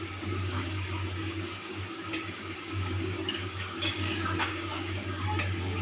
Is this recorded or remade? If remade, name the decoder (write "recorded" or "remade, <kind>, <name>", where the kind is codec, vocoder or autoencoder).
remade, codec, DAC